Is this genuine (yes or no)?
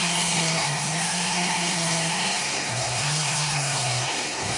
no